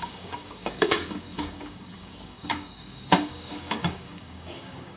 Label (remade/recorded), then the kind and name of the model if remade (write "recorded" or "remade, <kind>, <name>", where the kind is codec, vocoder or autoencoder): remade, codec, DAC